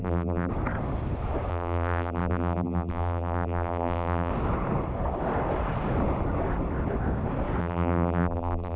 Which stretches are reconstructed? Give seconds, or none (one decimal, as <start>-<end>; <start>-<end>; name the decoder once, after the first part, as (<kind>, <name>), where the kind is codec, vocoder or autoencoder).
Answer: 0.0-0.5 (vocoder, BigVGAN v2); 1.5-4.3; 7.6-8.8